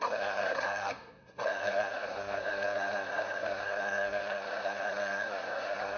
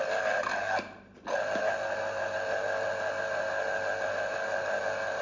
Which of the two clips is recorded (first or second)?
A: second